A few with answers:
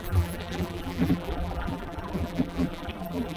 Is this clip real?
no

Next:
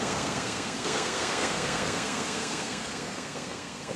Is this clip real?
no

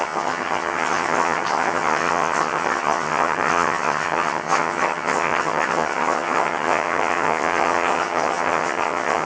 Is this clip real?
no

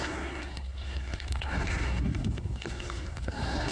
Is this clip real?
no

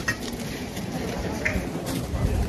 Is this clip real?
no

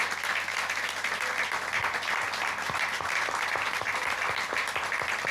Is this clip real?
yes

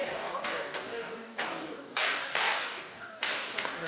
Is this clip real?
no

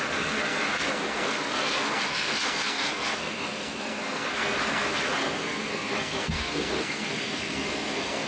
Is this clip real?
no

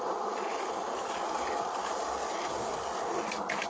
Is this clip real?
no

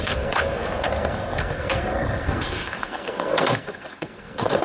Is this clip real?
no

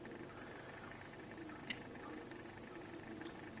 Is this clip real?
yes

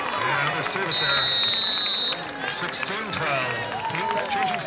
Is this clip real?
yes